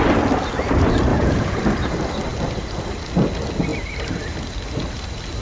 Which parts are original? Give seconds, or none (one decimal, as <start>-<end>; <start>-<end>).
0.0-1.1; 1.6-5.4